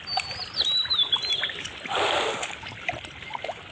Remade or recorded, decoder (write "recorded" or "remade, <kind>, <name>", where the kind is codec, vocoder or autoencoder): recorded